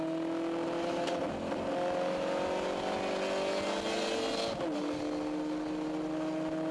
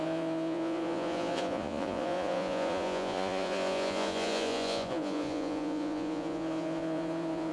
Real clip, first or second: first